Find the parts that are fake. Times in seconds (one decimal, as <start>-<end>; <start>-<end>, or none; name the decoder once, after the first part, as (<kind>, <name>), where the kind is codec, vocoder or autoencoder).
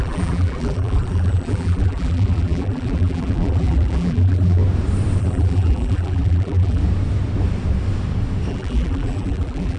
0.0-4.6 (vocoder, BigVGAN v2); 5.2-6.8; 8.5-9.8